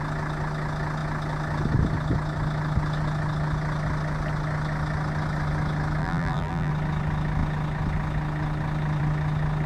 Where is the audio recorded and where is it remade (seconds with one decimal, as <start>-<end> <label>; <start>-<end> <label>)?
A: 0.0-6.0 recorded; 6.0-6.7 remade; 6.7-9.7 recorded